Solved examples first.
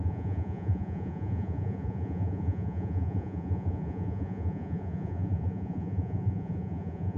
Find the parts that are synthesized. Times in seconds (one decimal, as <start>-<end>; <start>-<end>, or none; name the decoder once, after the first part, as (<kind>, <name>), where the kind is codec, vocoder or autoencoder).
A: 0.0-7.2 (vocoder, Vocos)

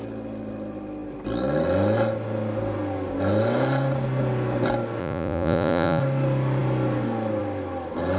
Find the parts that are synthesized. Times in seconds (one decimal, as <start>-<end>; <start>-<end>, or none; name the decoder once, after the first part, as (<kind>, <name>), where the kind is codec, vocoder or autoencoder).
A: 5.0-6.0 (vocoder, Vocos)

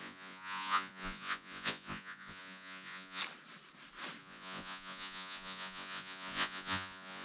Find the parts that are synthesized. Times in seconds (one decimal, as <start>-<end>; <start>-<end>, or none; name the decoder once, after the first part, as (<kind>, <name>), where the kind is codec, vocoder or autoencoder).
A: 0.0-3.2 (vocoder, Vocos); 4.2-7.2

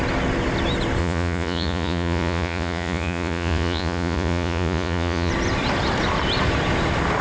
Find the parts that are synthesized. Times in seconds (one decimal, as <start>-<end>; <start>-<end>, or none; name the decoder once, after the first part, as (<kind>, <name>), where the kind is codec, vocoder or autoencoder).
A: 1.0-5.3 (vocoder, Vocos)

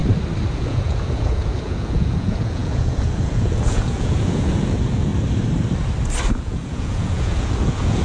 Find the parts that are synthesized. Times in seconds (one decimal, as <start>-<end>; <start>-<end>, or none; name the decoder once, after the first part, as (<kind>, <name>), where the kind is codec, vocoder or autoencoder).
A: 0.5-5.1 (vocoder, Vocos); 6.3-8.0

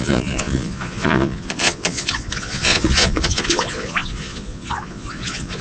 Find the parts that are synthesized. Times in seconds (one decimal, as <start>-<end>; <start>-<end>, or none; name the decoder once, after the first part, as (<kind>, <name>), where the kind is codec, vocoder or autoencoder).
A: 0.0-5.6 (vocoder, Vocos)